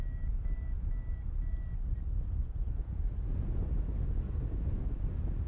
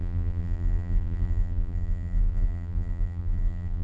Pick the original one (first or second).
first